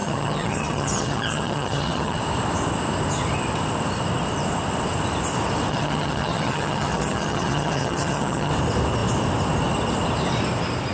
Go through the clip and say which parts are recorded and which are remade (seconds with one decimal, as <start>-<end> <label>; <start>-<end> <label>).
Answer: 0.0-2.2 remade; 2.2-5.7 recorded; 5.7-8.5 remade; 8.5-10.9 recorded